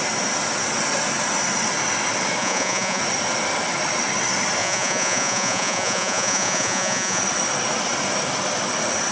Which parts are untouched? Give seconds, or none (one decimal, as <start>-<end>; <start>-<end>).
0.0-2.4; 3.0-4.6; 7.2-9.1